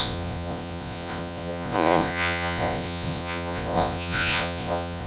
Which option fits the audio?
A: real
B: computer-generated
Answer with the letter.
B